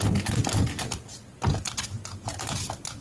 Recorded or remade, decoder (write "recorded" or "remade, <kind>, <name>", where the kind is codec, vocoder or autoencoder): recorded